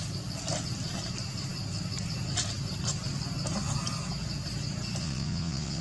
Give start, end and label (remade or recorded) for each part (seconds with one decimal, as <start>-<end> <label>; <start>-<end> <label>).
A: 0.0-5.0 recorded; 5.0-5.8 remade